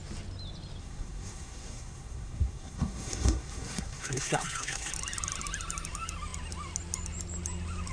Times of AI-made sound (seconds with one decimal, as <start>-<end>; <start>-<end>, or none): 0.8-4.9

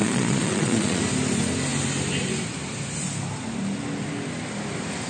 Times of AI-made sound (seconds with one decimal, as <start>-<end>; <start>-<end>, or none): 0.0-1.0

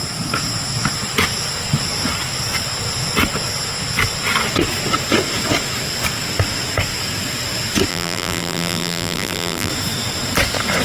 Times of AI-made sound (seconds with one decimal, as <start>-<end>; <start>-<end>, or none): 7.9-9.7

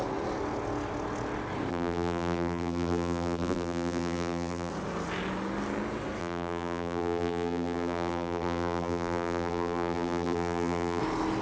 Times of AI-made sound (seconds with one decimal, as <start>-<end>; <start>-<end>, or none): 1.7-4.7; 6.2-11.0